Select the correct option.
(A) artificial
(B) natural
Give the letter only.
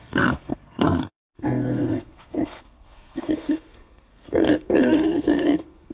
A